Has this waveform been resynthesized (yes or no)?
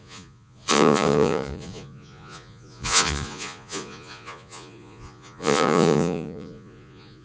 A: yes